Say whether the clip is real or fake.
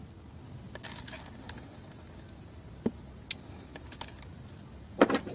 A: real